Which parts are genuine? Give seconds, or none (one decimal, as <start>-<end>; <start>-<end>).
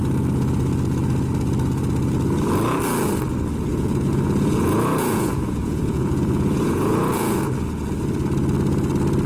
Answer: 0.0-3.7; 7.5-9.3